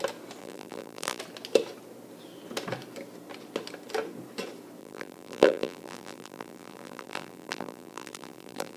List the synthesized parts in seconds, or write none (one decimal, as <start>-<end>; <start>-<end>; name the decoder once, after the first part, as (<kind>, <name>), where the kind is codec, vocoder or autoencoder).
0.4-1.2 (vocoder, BigVGAN v2); 4.8-8.8